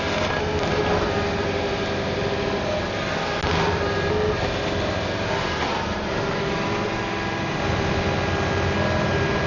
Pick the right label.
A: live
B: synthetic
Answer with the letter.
A